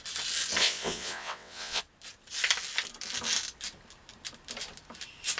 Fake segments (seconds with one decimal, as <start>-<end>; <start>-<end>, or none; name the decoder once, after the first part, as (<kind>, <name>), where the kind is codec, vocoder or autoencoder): 0.6-1.8 (vocoder, WaveNeXt)